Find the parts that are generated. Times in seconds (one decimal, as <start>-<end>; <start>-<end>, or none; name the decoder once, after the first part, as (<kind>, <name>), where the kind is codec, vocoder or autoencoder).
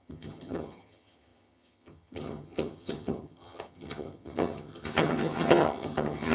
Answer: 0.0-6.3 (vocoder, HiFi-GAN)